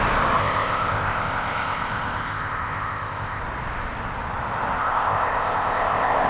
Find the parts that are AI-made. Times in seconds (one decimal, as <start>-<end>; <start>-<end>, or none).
0.4-3.4; 4.8-6.3